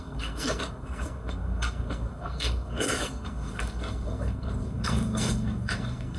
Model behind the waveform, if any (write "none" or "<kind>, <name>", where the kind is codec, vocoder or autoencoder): codec, SNAC